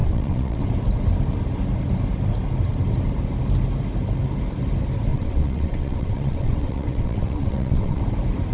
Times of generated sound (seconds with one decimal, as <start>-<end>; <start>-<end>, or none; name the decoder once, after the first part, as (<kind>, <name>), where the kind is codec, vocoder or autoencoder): 0.0-0.6 (vocoder, WaveNeXt); 5.1-8.0